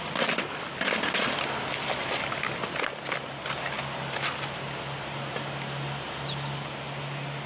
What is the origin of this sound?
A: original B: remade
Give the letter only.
A